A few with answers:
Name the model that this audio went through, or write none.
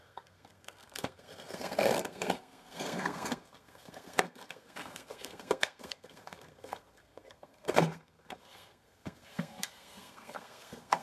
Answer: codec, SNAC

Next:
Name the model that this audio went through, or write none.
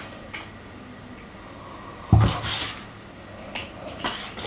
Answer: none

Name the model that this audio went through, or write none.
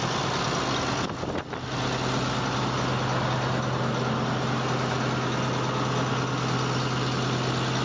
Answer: none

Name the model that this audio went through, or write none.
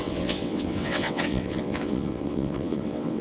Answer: vocoder, WaveNeXt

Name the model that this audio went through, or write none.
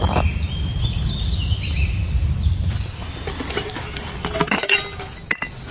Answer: none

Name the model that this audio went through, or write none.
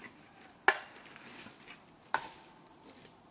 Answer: none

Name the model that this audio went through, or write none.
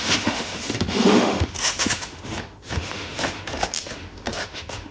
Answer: autoencoder, DAC-VAE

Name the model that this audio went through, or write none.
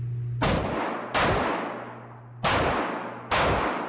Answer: none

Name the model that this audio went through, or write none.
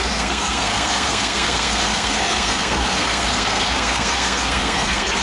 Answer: codec, SNAC